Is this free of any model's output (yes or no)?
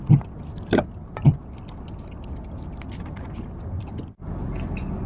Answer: yes